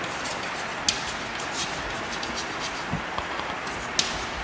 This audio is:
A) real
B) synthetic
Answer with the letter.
A